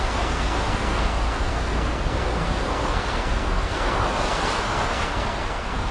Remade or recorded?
remade